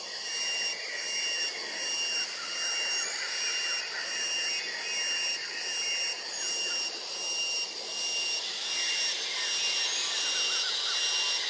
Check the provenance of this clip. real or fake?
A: real